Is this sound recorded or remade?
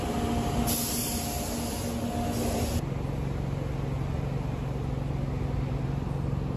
recorded